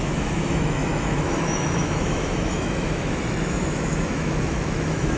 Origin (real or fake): fake